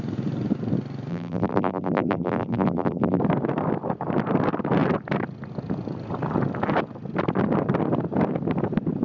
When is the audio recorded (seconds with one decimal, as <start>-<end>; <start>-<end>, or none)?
0.0-1.1; 3.2-9.0